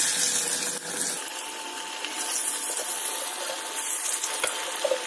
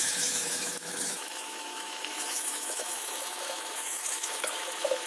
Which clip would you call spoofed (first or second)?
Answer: second